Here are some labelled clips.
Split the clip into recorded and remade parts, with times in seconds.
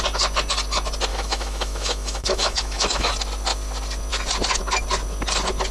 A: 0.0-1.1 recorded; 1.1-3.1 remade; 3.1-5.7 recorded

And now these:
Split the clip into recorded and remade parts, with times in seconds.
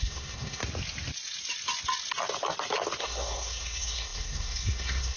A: 0.0-0.6 remade; 0.6-3.0 recorded; 3.0-5.2 remade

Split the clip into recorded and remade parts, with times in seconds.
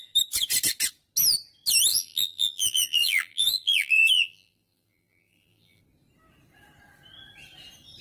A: 0.0-1.9 recorded; 1.9-5.8 remade; 5.8-8.0 recorded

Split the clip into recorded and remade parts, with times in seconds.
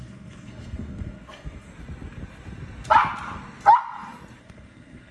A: 0.0-1.7 remade; 1.7-4.4 recorded; 4.4-5.1 remade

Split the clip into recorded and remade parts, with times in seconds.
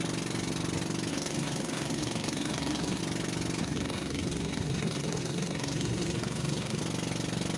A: 0.0-1.1 recorded; 1.1-3.0 remade; 3.0-3.6 recorded; 3.6-6.8 remade; 6.8-7.6 recorded